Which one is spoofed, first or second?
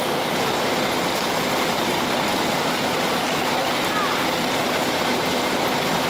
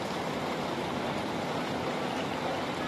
second